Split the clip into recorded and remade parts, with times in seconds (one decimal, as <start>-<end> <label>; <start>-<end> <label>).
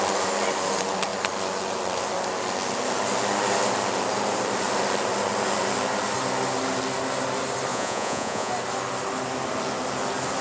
0.0-7.7 recorded; 7.7-8.5 remade; 8.5-10.4 recorded